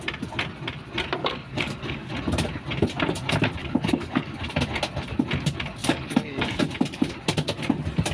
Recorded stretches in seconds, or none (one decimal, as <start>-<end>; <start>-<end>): 0.0-1.2; 2.1-3.6; 4.4-5.8; 6.6-8.1